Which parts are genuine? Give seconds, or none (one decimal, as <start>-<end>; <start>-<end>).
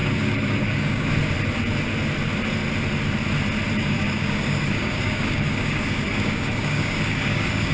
1.1-3.8